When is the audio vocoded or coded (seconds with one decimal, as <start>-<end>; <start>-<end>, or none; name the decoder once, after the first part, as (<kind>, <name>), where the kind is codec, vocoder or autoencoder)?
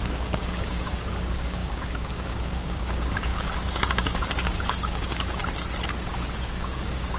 0.0-5.4 (codec, DAC); 6.1-7.2